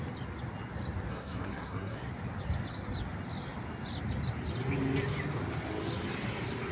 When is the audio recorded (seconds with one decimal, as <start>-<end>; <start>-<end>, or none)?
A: 0.0-1.1; 2.1-6.7